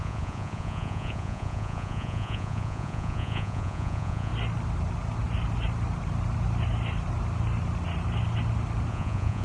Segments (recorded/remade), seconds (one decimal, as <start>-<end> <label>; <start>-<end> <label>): 0.0-4.3 remade; 4.3-8.9 recorded; 8.9-9.4 remade